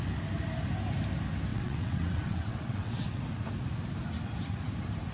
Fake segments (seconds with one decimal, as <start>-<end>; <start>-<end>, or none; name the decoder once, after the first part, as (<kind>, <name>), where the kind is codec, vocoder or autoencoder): 1.5-3.2 (vocoder, WaveNeXt)